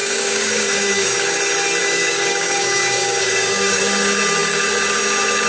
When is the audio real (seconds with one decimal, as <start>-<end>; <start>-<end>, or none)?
1.4-1.8; 3.8-5.5